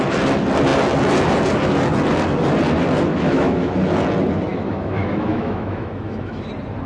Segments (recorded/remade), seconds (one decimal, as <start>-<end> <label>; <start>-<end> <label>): 0.0-3.1 recorded; 3.1-3.7 remade; 3.7-4.5 recorded; 4.5-6.5 remade; 6.5-6.9 recorded